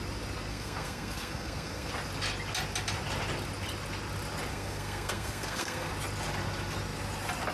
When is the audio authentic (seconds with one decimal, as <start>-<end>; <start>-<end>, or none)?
0.0-0.5; 1.9-4.5; 5.9-7.5